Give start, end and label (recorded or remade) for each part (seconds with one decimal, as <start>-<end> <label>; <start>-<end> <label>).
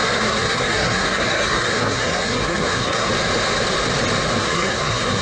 0.0-3.1 remade; 3.1-4.4 recorded; 4.4-5.2 remade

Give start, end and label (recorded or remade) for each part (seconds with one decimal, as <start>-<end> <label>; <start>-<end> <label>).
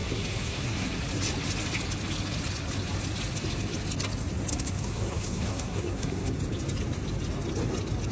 0.0-1.0 remade; 1.0-4.5 recorded; 4.5-6.3 remade; 6.3-8.1 recorded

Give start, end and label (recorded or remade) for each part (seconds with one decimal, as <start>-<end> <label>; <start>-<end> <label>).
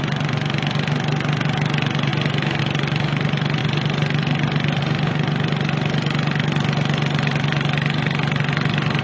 0.0-9.0 recorded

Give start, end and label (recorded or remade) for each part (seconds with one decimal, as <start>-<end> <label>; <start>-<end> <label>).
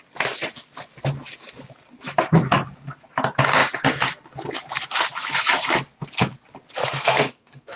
0.0-6.8 recorded; 6.8-7.8 remade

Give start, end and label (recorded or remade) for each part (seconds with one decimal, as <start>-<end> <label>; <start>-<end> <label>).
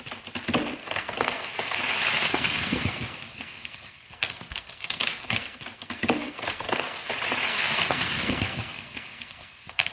0.0-0.8 recorded; 0.8-1.8 remade; 1.8-2.2 recorded; 2.2-7.1 remade; 7.1-7.5 recorded; 7.5-9.9 remade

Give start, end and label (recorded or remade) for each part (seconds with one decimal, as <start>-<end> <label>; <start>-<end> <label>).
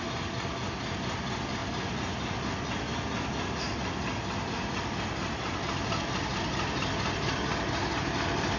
0.0-8.6 recorded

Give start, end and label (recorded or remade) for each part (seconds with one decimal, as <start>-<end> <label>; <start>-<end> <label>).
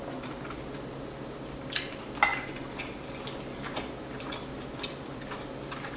0.0-6.0 recorded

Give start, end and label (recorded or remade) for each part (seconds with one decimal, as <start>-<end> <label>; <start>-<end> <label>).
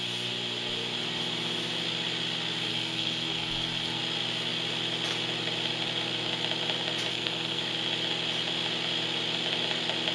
0.0-2.7 recorded; 2.7-4.0 remade; 4.0-7.1 recorded; 7.1-7.6 remade; 7.6-10.1 recorded